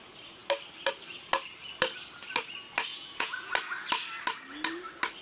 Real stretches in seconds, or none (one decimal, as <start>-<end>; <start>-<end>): 0.0-2.9; 3.5-5.2